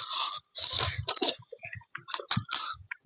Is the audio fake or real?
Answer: real